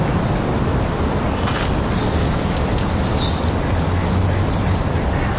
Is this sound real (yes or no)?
yes